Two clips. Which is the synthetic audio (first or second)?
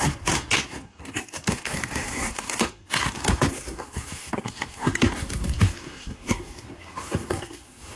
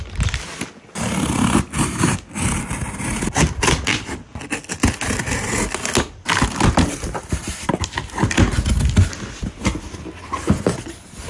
first